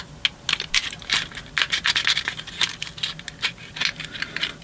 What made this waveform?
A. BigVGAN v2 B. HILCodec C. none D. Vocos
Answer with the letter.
C